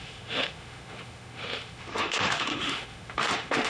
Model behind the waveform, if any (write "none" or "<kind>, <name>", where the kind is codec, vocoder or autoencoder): autoencoder, DAC-VAE